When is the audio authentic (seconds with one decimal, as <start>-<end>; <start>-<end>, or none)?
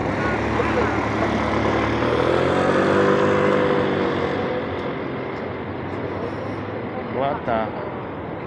0.0-8.5